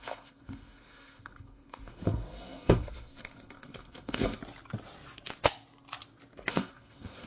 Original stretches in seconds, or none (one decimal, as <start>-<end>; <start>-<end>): 4.4-6.5